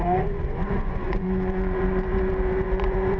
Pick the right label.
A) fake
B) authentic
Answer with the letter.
A